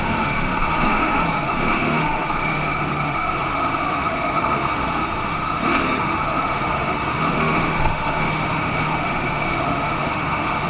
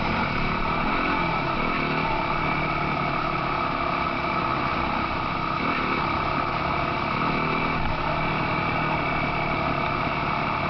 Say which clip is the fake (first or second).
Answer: first